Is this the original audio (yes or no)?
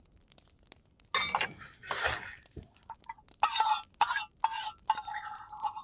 yes